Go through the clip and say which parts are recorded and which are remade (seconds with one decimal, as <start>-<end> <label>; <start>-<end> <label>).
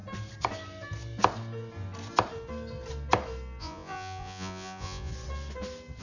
0.0-3.6 recorded; 3.6-5.1 remade; 5.1-6.0 recorded